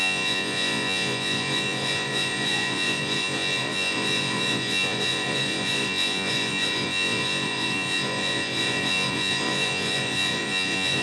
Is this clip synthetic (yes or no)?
yes